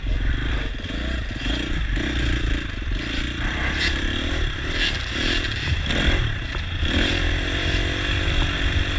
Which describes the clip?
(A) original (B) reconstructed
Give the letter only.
B